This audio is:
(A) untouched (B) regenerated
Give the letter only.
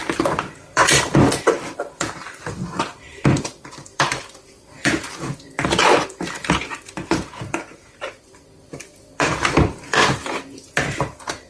B